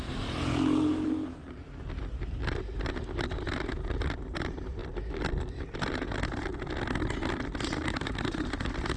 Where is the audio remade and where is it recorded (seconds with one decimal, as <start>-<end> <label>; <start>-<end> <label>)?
0.0-1.4 remade; 1.4-2.1 recorded; 2.1-4.8 remade; 4.8-5.9 recorded; 5.9-6.5 remade; 6.5-7.6 recorded; 7.6-9.0 remade